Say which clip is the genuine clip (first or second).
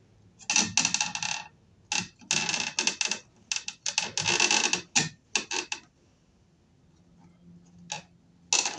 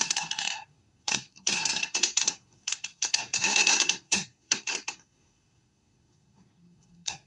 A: first